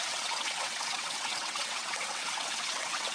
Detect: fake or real fake